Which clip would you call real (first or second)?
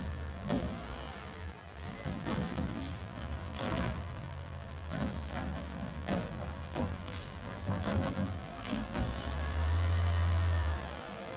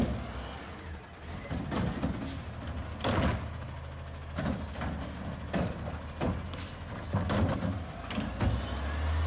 second